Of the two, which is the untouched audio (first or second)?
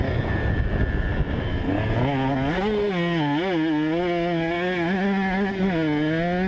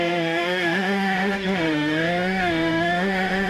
first